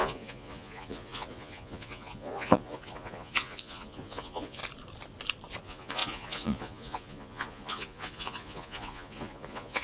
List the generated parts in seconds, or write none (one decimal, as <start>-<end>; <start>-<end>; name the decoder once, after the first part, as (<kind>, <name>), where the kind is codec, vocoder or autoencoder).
0.0-4.6 (vocoder, Vocos); 5.6-9.8